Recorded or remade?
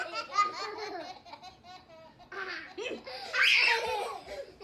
recorded